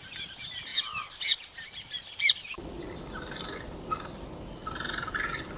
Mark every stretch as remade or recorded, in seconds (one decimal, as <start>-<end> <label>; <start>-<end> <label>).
0.0-0.7 recorded; 0.7-2.6 remade; 2.6-4.6 recorded; 4.6-5.1 remade; 5.1-5.6 recorded